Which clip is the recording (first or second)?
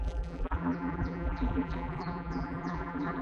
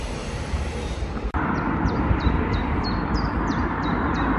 second